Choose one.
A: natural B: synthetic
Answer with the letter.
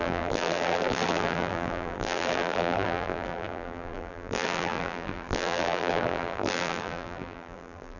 B